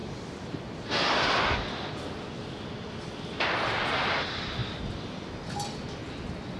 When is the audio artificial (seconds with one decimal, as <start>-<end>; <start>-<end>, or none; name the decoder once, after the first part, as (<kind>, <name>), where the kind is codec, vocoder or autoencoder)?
none

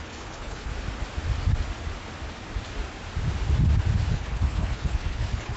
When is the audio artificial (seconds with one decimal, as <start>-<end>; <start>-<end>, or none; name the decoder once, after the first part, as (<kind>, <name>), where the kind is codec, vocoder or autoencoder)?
0.0-0.7 (codec, HILCodec); 4.1-5.6

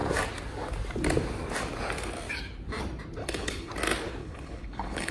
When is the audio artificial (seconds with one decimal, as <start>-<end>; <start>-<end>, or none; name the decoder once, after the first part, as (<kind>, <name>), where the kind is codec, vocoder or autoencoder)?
3.2-3.7 (codec, HILCodec); 4.2-5.1

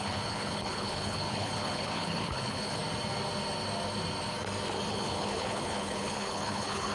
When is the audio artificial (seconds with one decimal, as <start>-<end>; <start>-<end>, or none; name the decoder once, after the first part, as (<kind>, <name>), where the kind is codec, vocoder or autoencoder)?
0.0-2.8 (codec, HILCodec); 4.9-6.9